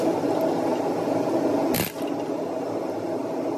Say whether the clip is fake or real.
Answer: real